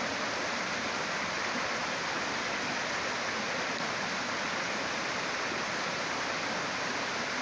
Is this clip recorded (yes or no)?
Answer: yes